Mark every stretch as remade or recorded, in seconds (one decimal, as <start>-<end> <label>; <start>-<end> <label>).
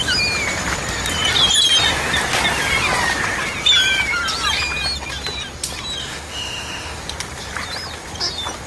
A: 0.0-6.0 recorded; 6.0-7.0 remade; 7.0-8.7 recorded